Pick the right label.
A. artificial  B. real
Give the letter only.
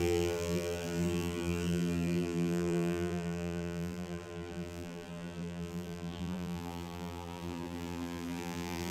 A